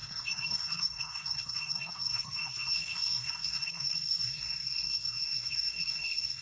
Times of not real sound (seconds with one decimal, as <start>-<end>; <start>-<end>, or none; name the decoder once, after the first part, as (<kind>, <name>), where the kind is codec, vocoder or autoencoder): 0.0-6.4 (codec, SNAC)

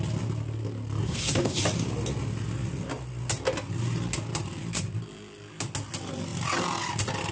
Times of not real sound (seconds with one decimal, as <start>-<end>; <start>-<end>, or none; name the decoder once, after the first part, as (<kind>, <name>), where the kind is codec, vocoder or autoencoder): 1.0-1.6 (codec, SNAC)

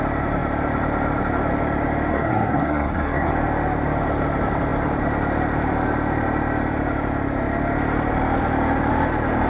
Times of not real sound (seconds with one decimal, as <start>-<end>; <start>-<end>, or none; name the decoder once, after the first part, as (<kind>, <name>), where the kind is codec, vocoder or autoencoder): 2.1-3.3 (codec, SNAC)

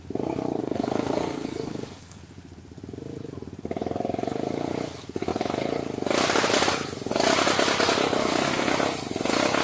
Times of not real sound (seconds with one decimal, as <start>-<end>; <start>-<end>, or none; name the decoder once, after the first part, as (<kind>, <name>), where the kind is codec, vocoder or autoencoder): 0.6-2.2 (codec, SNAC); 8.2-8.7

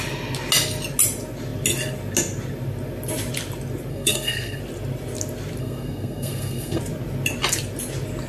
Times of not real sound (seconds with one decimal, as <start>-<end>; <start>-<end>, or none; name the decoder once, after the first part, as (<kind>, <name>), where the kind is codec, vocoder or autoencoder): 3.9-4.6 (codec, SNAC); 5.6-6.8

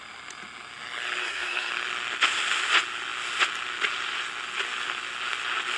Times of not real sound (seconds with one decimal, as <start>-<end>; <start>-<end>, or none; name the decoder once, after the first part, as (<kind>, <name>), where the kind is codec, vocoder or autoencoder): 1.2-1.7 (codec, SNAC)

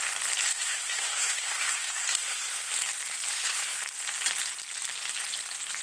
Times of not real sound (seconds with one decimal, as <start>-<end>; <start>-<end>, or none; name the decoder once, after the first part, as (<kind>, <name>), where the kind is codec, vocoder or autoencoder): 0.5-2.7 (codec, SNAC); 3.3-3.8